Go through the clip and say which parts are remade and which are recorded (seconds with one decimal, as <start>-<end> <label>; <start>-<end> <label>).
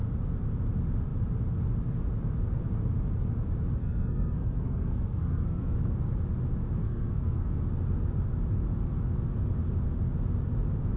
0.0-3.8 recorded; 3.8-5.9 remade; 5.9-6.8 recorded; 6.8-7.6 remade; 7.6-11.0 recorded